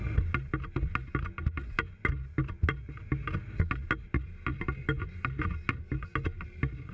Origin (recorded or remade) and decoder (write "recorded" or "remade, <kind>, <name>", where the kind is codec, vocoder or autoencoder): recorded